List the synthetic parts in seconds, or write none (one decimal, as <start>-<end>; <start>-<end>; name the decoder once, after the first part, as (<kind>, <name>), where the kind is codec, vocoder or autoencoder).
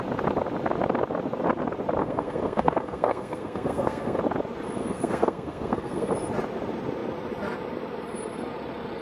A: 2.0-4.2 (codec, SNAC); 4.8-6.1